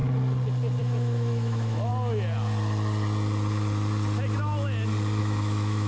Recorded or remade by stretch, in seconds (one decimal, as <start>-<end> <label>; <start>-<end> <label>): 0.0-0.8 recorded; 0.8-1.9 remade; 1.9-5.2 recorded; 5.2-5.9 remade